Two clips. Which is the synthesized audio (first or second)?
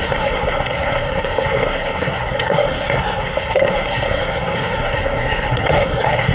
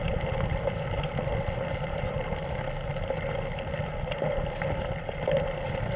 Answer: first